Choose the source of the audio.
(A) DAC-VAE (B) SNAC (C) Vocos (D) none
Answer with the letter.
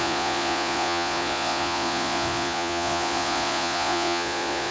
C